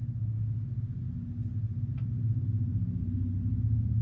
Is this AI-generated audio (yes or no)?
no